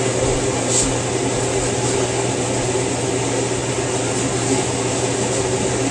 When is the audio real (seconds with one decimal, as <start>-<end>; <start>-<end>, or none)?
0.0-5.9